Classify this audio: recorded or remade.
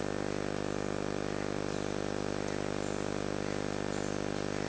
recorded